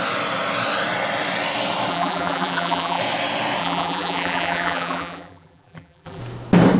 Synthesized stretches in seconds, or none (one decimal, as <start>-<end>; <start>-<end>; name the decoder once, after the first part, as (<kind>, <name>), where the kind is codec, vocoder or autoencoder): 1.9-3.0 (vocoder, BigVGAN v2); 3.6-6.2